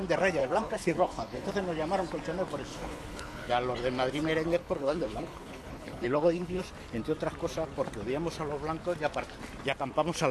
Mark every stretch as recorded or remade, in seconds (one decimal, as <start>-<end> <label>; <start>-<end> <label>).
0.0-0.4 recorded; 0.4-1.5 remade; 1.5-2.7 recorded; 2.7-3.5 remade; 3.5-4.6 recorded; 4.6-6.6 remade; 6.6-10.3 recorded